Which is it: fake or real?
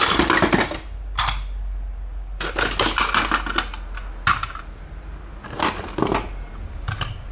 real